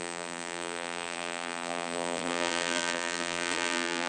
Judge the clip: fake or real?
fake